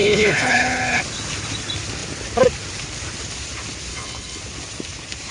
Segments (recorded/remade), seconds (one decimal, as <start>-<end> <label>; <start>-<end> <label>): 0.0-1.0 remade; 1.0-3.9 recorded; 3.9-4.4 remade; 4.4-5.3 recorded

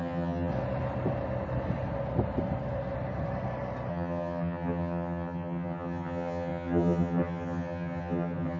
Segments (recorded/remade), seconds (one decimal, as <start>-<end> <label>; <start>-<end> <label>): 0.0-0.5 remade; 0.5-3.9 recorded; 3.9-8.6 remade

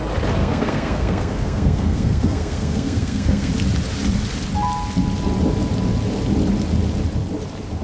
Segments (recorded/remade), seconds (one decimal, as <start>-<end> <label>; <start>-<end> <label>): 0.0-0.4 recorded; 0.4-3.5 remade; 3.5-7.8 recorded

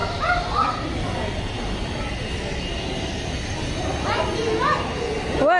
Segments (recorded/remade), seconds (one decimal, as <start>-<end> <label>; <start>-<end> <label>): 0.0-5.6 recorded

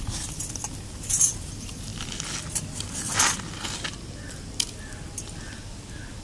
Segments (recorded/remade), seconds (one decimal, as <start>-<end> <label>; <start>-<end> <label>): 0.0-6.2 recorded

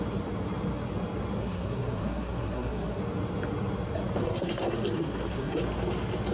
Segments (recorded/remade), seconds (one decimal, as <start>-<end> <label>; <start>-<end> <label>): 0.0-1.4 recorded; 1.4-3.0 remade; 3.0-4.2 recorded; 4.2-5.6 remade; 5.6-6.3 recorded